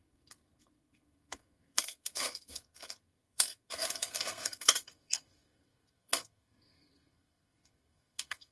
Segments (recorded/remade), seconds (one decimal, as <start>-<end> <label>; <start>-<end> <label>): 0.0-8.5 remade